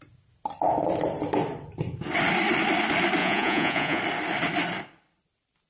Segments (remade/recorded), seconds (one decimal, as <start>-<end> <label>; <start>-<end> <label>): 0.0-3.2 recorded; 3.2-4.0 remade; 4.0-5.7 recorded